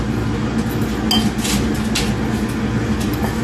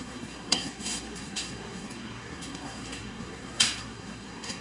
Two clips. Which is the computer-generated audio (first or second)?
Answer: second